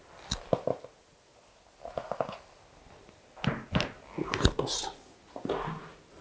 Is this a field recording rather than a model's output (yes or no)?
yes